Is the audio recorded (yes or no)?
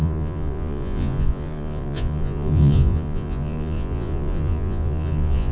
no